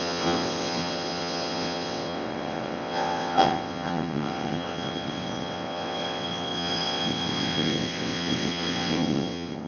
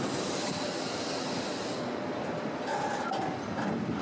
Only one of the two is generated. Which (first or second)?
first